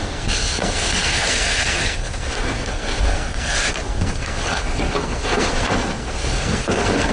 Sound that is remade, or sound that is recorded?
remade